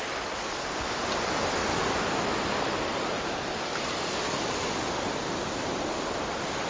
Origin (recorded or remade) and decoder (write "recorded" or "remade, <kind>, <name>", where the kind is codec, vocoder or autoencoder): recorded